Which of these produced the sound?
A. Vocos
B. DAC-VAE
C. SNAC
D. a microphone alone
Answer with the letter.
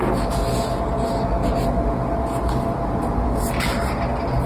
D